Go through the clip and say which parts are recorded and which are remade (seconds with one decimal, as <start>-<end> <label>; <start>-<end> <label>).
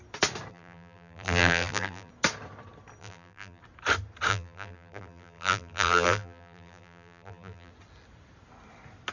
0.0-0.5 recorded; 0.5-2.1 remade; 2.1-3.0 recorded; 3.0-3.6 remade; 3.6-4.3 recorded; 4.3-7.7 remade; 7.7-9.1 recorded